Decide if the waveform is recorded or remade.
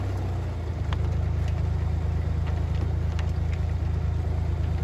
recorded